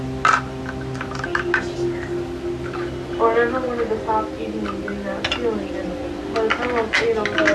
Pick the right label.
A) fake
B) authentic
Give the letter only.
B